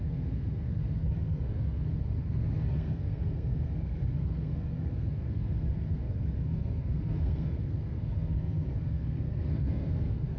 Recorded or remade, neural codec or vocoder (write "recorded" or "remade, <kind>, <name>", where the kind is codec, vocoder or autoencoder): remade, codec, SNAC